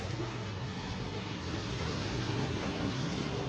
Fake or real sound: fake